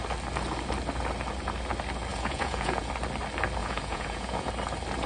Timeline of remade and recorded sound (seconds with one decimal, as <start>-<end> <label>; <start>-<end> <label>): 0.0-2.1 recorded; 2.1-2.9 remade; 2.9-3.6 recorded; 3.6-4.5 remade; 4.5-5.1 recorded